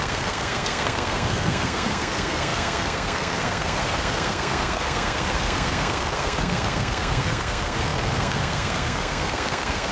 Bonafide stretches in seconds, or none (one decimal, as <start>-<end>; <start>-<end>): none